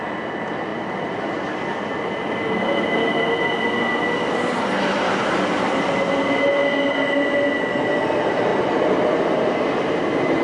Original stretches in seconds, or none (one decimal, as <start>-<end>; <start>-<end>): 0.0-10.4